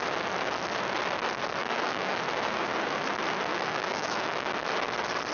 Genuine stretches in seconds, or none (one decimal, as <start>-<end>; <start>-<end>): 0.0-1.6; 2.2-3.5; 4.5-5.3